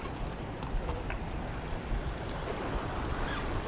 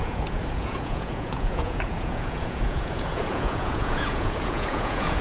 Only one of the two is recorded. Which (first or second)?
first